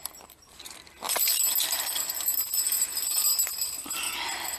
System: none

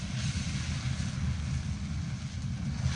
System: none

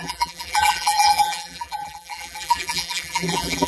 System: vocoder, BigVGAN v2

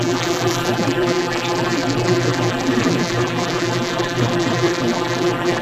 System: vocoder, BigVGAN v2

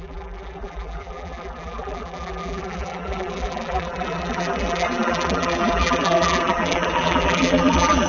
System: vocoder, BigVGAN v2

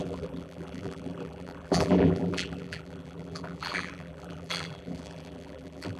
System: vocoder, BigVGAN v2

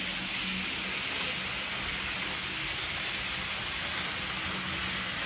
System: none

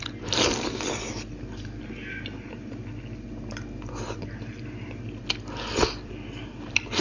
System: none